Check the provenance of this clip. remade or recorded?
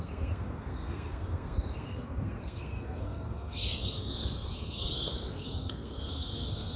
remade